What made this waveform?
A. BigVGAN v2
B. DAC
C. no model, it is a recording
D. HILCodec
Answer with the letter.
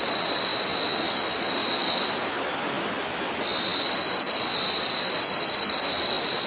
C